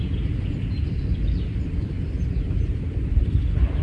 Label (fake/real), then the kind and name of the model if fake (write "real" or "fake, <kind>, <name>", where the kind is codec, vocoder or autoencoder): fake, vocoder, BigVGAN v2